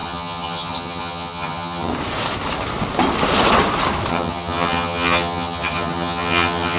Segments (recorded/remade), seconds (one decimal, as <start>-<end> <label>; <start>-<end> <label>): 0.0-1.9 remade; 1.9-4.1 recorded; 4.1-6.8 remade